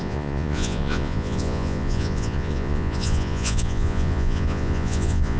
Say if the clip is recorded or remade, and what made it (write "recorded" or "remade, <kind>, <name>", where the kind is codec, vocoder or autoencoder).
remade, vocoder, Vocos